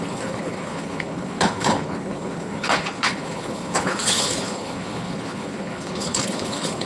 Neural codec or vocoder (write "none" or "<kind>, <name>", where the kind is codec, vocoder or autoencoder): codec, HILCodec